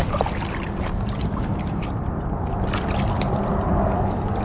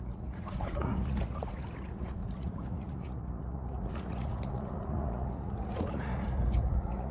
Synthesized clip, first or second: second